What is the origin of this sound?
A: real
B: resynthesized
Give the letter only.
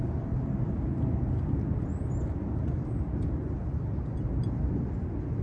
A